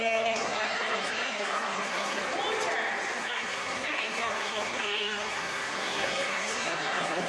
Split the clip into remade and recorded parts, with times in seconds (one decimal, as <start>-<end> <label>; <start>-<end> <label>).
0.0-2.2 remade; 2.2-3.2 recorded; 3.2-7.3 remade